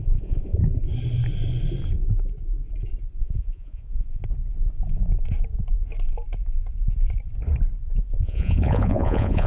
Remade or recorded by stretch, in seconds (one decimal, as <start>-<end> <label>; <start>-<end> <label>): 0.0-0.6 remade; 0.6-3.2 recorded; 3.2-4.2 remade; 4.2-8.0 recorded; 8.0-9.5 remade